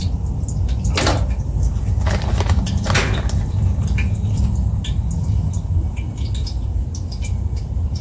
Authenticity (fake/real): real